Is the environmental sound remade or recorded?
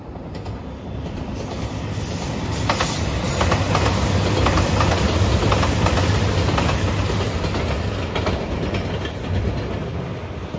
recorded